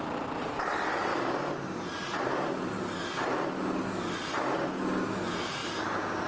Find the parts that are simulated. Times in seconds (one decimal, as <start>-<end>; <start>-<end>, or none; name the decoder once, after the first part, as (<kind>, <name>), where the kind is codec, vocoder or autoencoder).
1.1-3.4 (vocoder, BigVGAN v2); 5.6-6.3